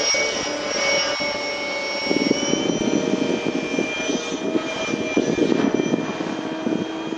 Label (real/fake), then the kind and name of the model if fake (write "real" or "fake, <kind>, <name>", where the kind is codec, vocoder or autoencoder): real